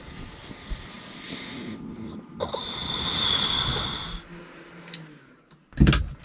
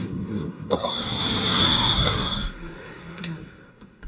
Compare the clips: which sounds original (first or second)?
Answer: first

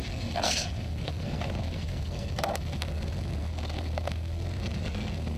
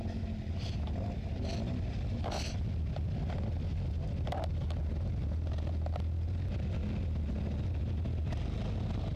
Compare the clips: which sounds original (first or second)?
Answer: second